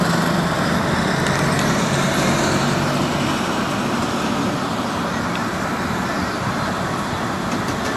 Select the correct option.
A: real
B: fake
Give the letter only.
A